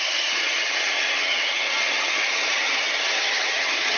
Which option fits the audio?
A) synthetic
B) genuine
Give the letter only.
A